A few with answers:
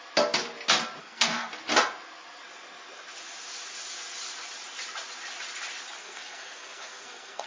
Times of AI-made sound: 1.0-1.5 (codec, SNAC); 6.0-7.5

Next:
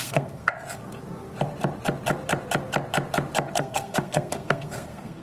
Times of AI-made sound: 0.0-0.5 (codec, SNAC); 3.6-5.2